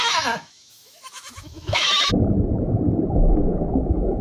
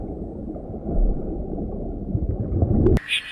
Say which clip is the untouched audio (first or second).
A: second